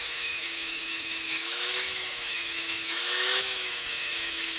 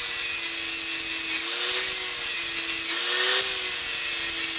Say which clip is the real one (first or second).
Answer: second